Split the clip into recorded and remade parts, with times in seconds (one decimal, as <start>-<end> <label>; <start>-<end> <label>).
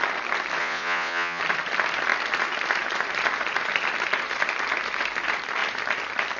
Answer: 0.0-0.6 recorded; 0.6-1.4 remade; 1.4-6.4 recorded